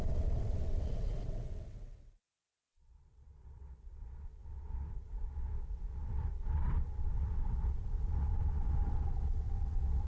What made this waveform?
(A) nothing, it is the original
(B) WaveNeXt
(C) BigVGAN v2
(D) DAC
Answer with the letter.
B